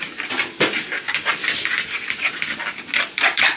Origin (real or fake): fake